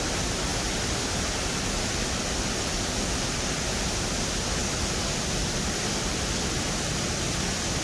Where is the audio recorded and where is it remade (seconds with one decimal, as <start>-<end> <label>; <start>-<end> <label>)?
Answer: 0.0-7.8 recorded